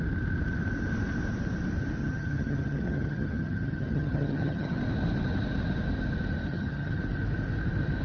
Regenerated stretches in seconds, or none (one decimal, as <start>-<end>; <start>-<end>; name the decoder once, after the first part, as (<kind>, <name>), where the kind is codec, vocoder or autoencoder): 2.0-4.8 (vocoder, HiFi-GAN); 6.5-7.0